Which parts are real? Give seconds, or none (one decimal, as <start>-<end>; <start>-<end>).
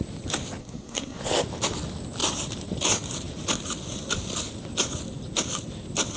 0.0-0.6; 1.2-6.2